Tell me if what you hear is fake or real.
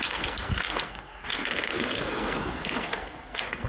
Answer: fake